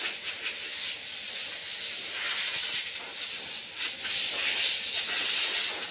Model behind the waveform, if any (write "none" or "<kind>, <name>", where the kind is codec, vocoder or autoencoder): none